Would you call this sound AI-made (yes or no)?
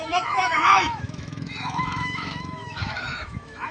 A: yes